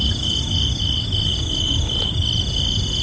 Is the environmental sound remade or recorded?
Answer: recorded